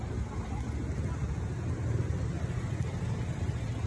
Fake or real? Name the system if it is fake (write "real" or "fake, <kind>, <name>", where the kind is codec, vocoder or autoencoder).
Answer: real